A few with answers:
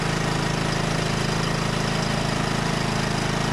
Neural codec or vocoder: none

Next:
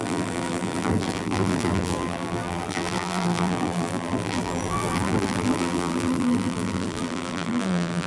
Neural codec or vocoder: vocoder, BigVGAN v2